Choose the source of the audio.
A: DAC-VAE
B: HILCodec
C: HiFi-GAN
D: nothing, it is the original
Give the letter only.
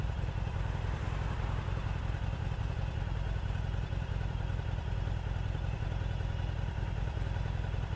D